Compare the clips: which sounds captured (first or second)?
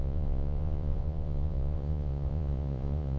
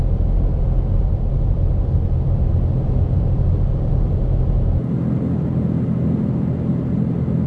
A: second